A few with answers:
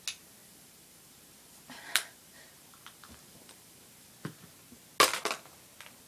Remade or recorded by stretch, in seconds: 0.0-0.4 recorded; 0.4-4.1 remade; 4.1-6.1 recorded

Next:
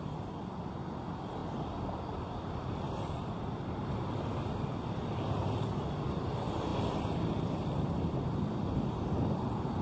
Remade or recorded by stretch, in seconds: 0.0-5.0 remade; 5.0-6.0 recorded; 6.0-6.7 remade; 6.7-7.4 recorded; 7.4-9.8 remade

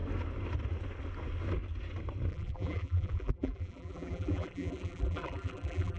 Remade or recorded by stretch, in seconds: 0.0-2.3 recorded; 2.3-6.0 remade

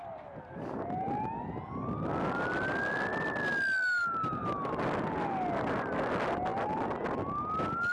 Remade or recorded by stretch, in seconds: 0.0-7.9 recorded

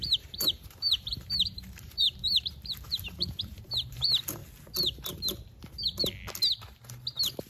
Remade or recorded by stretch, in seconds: 0.0-4.4 remade; 4.4-7.5 recorded

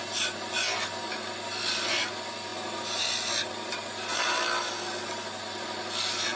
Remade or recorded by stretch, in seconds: 0.0-6.4 recorded

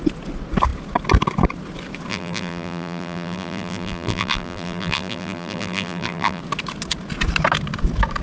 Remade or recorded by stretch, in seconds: 0.0-2.1 recorded; 2.1-6.4 remade; 6.4-8.2 recorded

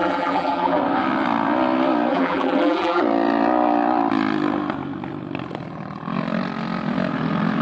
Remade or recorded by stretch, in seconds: 0.0-0.8 remade; 0.8-2.1 recorded; 2.1-3.0 remade; 3.0-7.6 recorded